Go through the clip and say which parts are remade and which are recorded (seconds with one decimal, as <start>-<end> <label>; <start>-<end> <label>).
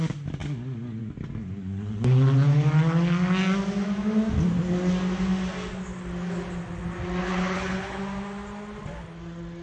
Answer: 0.0-7.2 recorded; 7.2-8.0 remade; 8.0-9.6 recorded